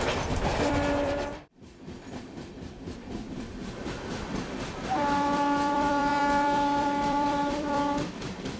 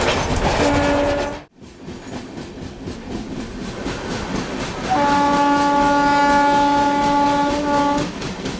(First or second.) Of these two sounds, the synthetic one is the first